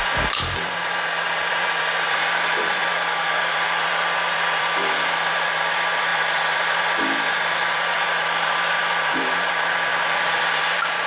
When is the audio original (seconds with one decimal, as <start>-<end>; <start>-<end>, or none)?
none